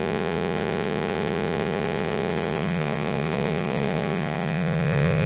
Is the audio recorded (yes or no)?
no